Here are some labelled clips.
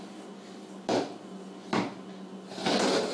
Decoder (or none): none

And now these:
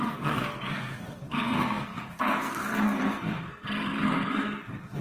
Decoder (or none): codec, SNAC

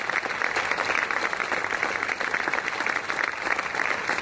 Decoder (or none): none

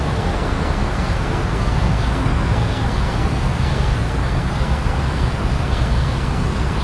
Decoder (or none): codec, SNAC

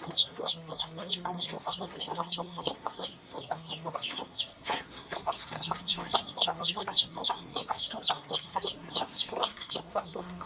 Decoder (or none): codec, SNAC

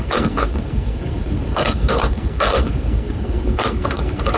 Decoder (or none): codec, SNAC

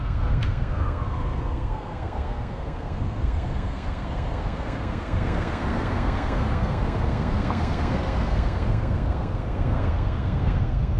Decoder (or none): codec, SNAC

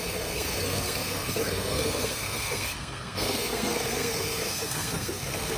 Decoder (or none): codec, SNAC